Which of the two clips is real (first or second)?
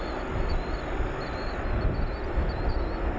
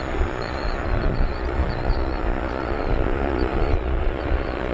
first